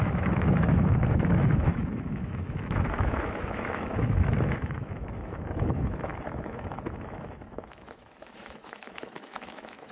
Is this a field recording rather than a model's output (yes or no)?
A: no